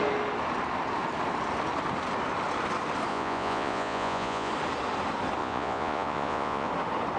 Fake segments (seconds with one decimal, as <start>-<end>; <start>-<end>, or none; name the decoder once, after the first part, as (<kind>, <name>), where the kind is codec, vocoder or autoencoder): 3.1-4.5 (vocoder, Vocos); 5.4-6.7